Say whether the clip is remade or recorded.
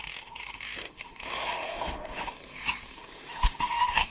remade